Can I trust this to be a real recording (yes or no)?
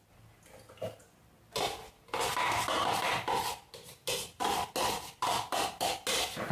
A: yes